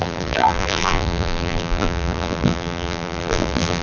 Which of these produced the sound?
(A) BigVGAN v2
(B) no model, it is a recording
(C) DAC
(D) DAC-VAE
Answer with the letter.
A